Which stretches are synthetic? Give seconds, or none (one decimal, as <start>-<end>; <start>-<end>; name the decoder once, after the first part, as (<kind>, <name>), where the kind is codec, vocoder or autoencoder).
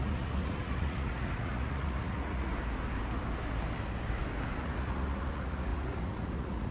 0.0-2.5 (vocoder, Vocos); 4.6-6.7